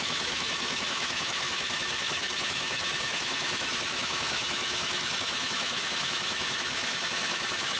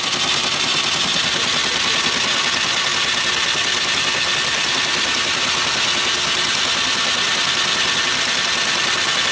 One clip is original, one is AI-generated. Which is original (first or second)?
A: second